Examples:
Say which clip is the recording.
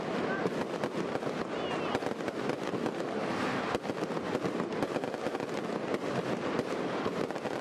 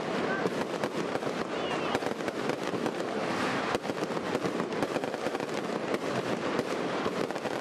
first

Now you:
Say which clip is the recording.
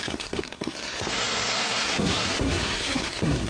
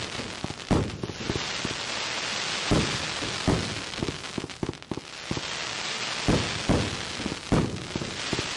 second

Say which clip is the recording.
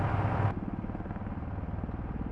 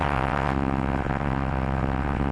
first